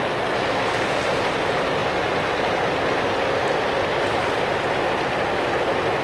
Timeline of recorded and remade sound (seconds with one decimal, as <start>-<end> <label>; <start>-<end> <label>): 0.0-6.0 recorded